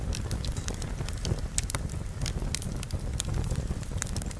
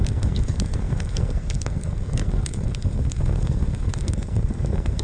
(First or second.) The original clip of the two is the first